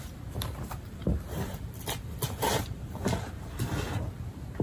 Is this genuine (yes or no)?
yes